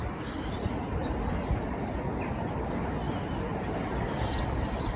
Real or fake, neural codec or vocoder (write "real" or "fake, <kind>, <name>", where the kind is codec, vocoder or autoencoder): real